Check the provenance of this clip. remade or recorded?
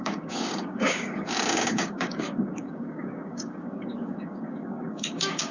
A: remade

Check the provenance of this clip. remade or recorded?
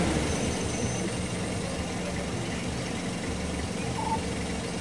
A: recorded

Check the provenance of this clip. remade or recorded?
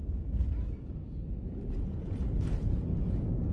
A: recorded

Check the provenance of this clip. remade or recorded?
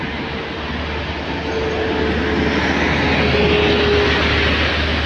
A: recorded